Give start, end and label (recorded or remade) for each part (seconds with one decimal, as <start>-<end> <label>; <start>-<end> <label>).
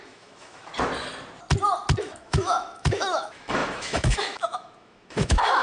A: 0.0-0.7 remade; 0.7-2.0 recorded; 2.0-5.6 remade